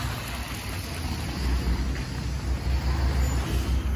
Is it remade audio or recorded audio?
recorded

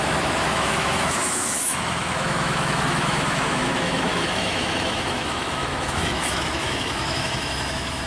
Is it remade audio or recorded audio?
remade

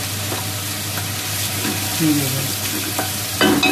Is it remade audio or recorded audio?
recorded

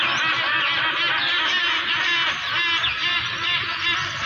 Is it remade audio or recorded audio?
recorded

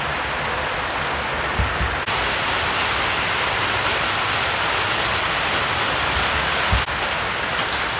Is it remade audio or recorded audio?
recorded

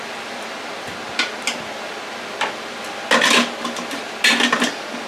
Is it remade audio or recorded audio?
recorded